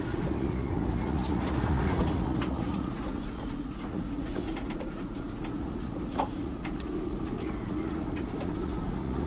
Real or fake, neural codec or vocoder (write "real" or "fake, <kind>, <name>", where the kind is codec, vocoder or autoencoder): fake, vocoder, Vocos